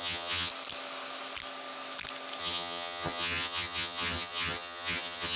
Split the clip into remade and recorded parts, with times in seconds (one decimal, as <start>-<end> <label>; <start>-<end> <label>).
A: 0.0-0.5 remade; 0.5-2.4 recorded; 2.4-5.4 remade